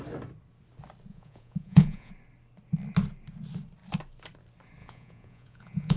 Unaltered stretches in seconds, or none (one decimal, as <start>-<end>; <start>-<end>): 0.0-1.1; 2.1-4.8